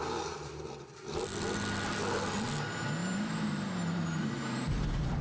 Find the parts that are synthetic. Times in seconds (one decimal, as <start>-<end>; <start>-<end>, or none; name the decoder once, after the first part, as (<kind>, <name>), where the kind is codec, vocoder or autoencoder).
3.0-5.2 (vocoder, BigVGAN v2)